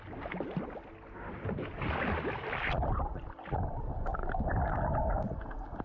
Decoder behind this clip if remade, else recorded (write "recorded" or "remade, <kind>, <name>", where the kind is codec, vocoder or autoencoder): recorded